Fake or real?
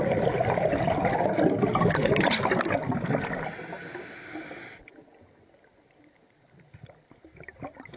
real